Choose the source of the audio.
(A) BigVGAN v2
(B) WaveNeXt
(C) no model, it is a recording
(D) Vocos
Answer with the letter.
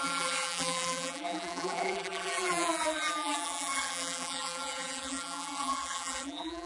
A